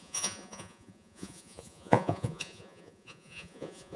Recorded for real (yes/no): no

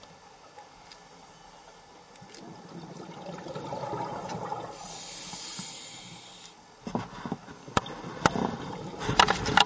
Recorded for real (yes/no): yes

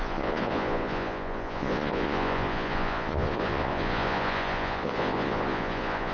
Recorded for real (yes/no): no